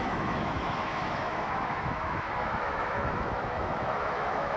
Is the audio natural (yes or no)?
no